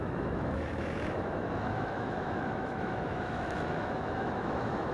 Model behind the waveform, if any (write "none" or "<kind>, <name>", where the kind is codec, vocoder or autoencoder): autoencoder, DAC-VAE